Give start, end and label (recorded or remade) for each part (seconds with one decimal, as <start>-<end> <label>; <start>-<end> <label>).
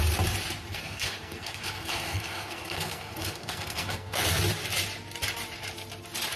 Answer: 0.0-0.7 recorded; 0.7-4.4 remade; 4.4-6.4 recorded